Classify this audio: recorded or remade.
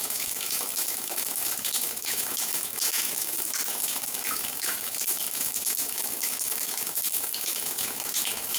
remade